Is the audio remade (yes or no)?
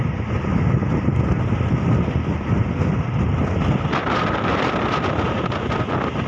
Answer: no